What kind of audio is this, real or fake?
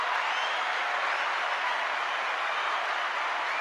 real